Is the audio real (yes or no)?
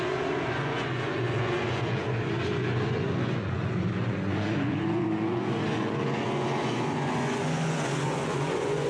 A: no